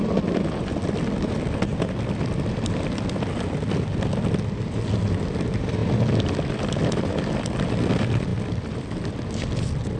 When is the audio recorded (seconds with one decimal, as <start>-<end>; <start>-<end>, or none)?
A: 0.0-1.7; 2.7-8.3

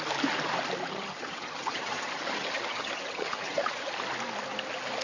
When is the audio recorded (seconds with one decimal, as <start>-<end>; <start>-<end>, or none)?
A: 0.0-0.9; 3.9-5.0

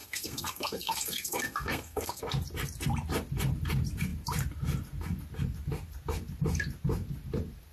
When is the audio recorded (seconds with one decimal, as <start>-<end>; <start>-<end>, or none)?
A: 2.2-7.7

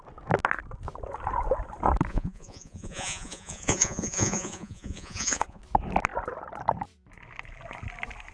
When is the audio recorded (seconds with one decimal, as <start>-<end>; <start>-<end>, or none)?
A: 0.0-2.1; 5.6-8.3

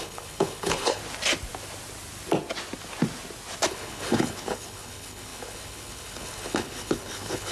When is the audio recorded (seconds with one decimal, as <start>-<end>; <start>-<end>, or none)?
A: 1.0-3.7

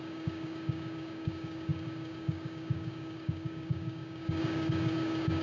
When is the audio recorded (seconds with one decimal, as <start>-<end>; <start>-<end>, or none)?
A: none